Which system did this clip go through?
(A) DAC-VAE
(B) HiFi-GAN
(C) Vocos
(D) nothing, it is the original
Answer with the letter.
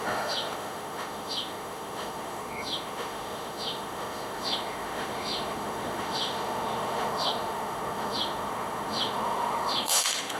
A